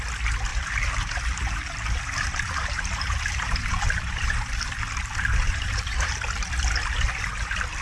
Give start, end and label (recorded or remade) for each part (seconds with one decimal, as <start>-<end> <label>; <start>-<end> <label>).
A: 0.0-0.5 recorded; 0.5-4.8 remade; 4.8-5.3 recorded; 5.3-6.1 remade; 6.1-7.8 recorded